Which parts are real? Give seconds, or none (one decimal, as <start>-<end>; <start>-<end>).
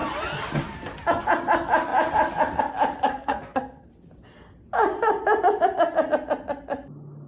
0.0-3.1; 3.9-7.3